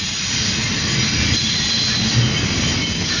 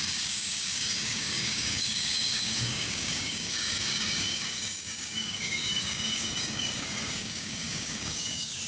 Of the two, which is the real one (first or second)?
first